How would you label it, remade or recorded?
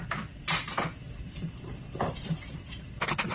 recorded